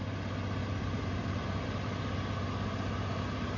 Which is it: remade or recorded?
recorded